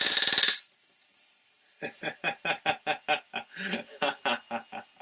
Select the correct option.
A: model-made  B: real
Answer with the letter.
B